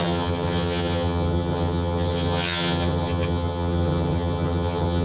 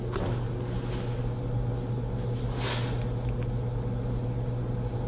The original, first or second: second